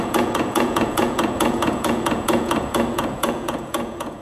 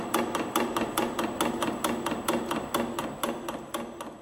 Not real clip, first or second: first